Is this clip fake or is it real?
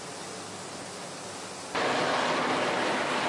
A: real